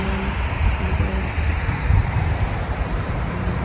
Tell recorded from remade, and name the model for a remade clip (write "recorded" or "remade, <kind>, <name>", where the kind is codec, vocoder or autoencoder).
remade, vocoder, BigVGAN v2